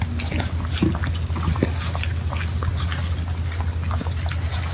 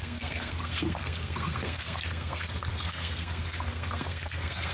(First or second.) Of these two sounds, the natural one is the first